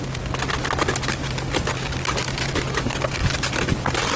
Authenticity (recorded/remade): recorded